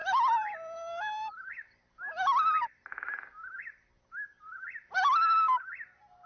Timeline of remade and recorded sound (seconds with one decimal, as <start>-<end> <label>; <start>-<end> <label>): 0.0-1.5 remade; 1.5-6.3 recorded